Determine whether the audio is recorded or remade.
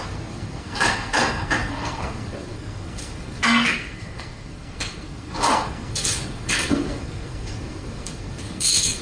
remade